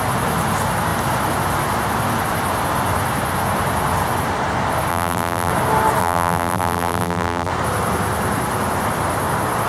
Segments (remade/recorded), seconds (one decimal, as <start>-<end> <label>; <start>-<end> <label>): 0.0-4.9 recorded; 4.9-5.5 remade; 5.5-6.0 recorded; 6.0-7.5 remade; 7.5-9.7 recorded